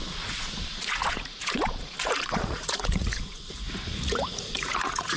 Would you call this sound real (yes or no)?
no